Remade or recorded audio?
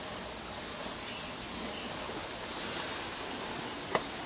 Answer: recorded